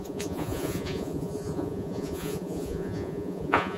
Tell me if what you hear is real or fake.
fake